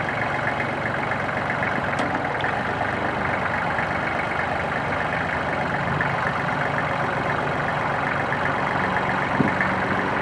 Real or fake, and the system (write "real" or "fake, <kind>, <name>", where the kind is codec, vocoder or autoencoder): real